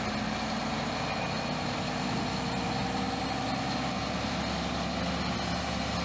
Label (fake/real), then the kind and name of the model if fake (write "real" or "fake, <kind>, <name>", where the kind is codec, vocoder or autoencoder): real